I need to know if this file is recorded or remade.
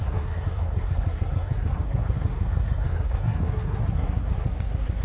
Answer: remade